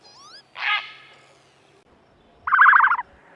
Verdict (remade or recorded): recorded